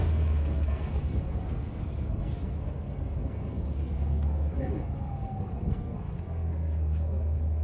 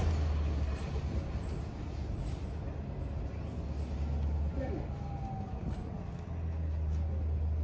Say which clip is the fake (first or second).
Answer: first